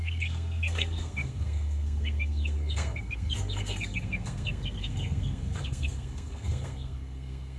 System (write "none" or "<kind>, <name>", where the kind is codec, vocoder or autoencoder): codec, SNAC